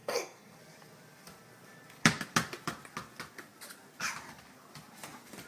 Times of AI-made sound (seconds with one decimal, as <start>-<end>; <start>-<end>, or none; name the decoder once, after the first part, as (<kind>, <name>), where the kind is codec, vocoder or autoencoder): 0.0-0.6 (codec, SNAC)